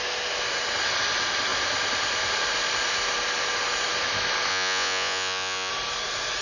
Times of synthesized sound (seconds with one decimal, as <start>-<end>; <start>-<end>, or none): 4.5-5.7